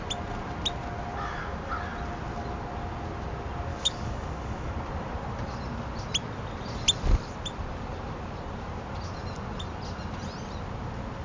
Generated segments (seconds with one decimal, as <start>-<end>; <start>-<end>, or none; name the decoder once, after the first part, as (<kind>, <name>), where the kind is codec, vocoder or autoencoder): 3.7-4.7 (codec, DAC)